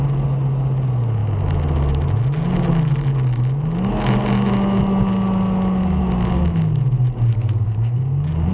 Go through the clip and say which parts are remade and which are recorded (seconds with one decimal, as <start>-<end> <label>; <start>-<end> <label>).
0.0-7.3 recorded; 7.3-8.0 remade; 8.0-8.5 recorded